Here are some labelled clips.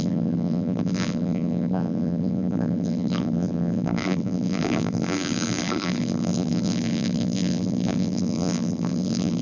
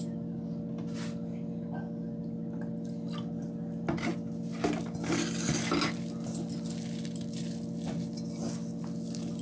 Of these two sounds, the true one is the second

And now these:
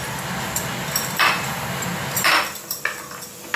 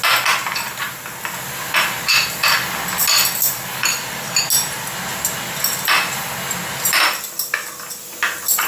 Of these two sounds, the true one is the second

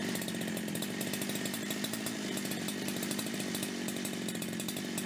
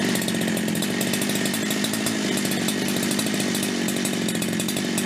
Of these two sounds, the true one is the second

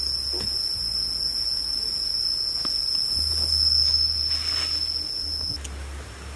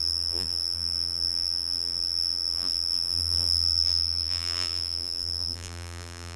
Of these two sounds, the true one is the first